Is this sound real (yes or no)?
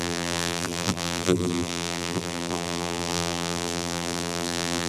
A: no